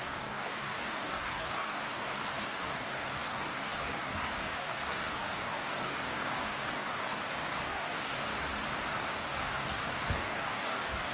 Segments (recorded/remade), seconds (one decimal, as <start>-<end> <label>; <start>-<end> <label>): 0.0-8.3 remade; 8.3-8.9 recorded; 8.9-11.1 remade